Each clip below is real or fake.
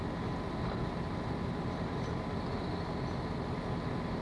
real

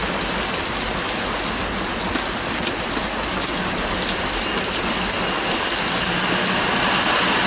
real